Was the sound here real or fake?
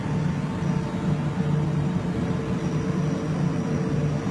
real